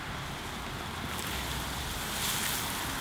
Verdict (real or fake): real